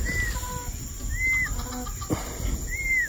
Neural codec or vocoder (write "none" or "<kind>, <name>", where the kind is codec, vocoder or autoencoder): none